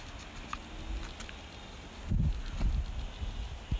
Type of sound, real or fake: real